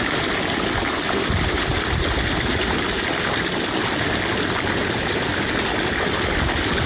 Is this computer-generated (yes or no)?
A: no